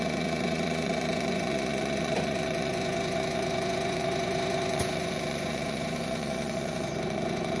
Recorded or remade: remade